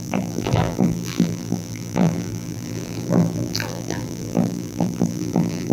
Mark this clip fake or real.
fake